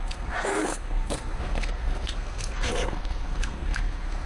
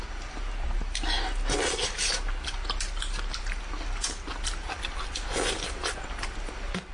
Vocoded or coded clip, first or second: first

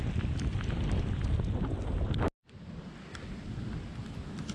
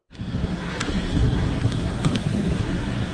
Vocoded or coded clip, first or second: second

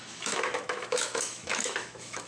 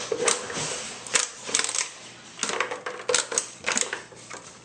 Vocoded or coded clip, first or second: first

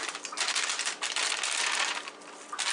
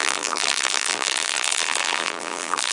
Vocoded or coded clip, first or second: second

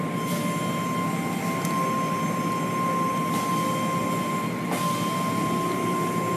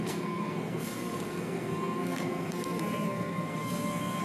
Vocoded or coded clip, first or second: second